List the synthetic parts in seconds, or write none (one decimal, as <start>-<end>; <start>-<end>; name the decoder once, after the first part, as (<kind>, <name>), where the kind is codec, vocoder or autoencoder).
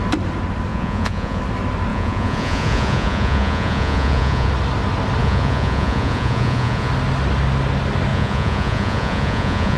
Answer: 0.7-1.4 (vocoder, Vocos); 1.9-4.5; 5.2-6.9; 8.1-9.8